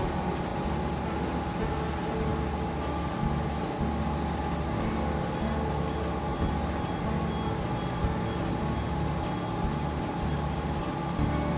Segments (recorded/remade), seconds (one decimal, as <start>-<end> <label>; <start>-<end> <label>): 0.0-11.6 recorded